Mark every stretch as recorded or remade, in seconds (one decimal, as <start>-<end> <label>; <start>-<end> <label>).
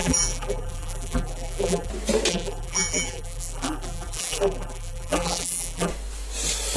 0.0-1.9 remade; 1.9-2.3 recorded; 2.3-5.9 remade; 5.9-6.8 recorded